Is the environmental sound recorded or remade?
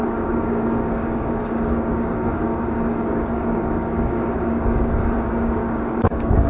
remade